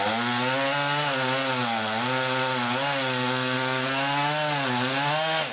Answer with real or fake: real